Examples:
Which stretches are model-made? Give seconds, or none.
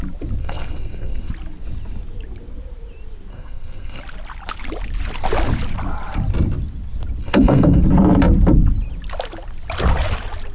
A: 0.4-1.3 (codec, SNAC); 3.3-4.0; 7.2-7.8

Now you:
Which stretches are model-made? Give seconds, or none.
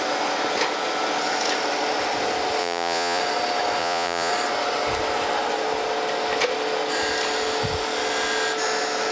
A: 2.6-3.2 (vocoder, Vocos); 3.8-4.3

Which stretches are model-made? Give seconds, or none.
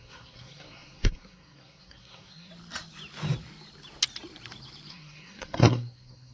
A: 0.0-2.5 (codec, SNAC); 4.9-6.3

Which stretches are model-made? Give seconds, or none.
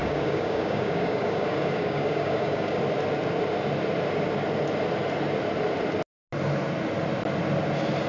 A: 0.0-2.8 (codec, DAC)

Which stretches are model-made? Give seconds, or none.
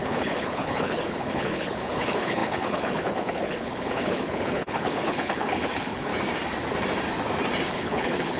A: 0.0-6.1 (codec, HILCodec); 7.7-8.4